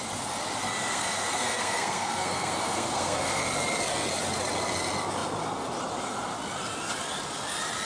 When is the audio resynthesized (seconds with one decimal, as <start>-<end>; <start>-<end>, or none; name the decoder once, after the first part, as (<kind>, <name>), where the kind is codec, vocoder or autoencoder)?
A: 0.9-3.4 (codec, SNAC)